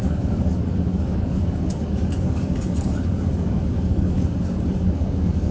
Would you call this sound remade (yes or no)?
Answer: yes